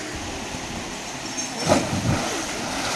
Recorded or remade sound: recorded